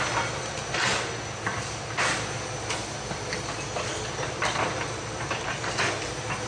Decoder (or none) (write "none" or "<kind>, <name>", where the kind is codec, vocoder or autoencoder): none